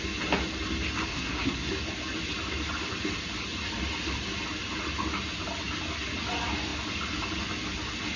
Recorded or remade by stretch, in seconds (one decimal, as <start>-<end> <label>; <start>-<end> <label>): 0.0-1.1 recorded; 1.1-1.7 remade; 1.7-8.2 recorded